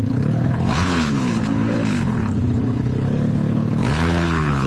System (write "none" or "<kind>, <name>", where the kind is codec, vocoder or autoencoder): codec, HILCodec